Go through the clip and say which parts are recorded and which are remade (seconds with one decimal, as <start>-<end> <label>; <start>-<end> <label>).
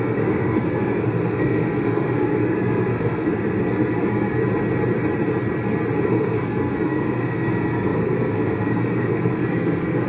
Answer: 0.0-4.4 remade; 4.4-6.1 recorded; 6.1-10.1 remade